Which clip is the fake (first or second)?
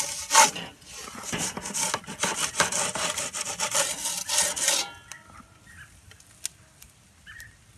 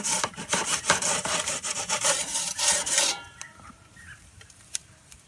second